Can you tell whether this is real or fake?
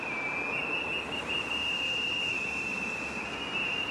real